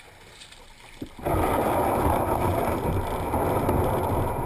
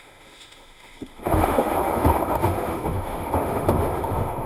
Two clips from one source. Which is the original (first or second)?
first